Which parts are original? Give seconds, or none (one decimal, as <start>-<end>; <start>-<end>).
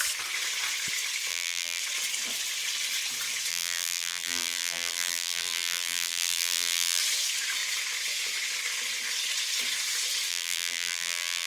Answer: 0.0-1.3; 1.8-3.5; 7.0-10.3